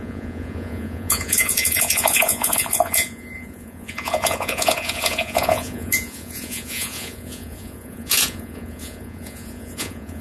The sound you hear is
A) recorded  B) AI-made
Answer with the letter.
B